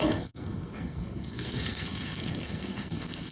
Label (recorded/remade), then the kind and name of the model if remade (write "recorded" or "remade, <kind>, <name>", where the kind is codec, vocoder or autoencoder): remade, codec, SNAC